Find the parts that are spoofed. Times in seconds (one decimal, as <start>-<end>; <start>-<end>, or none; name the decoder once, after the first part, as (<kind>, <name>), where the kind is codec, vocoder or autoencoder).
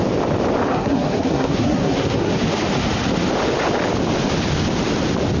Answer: 0.7-2.3 (codec, SNAC)